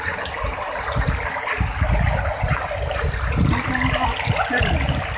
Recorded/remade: recorded